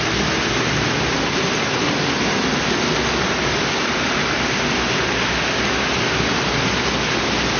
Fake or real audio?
real